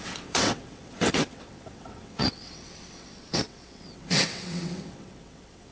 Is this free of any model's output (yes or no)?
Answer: no